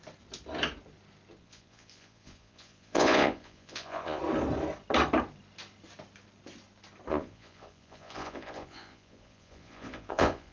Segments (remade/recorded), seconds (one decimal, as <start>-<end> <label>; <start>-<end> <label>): 0.0-1.4 recorded; 1.4-4.2 remade; 4.2-7.1 recorded; 7.1-10.5 remade